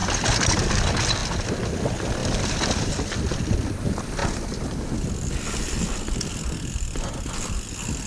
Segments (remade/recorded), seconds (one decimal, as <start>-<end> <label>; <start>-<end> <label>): 0.0-0.7 remade; 0.7-2.2 recorded; 2.2-2.9 remade; 2.9-8.1 recorded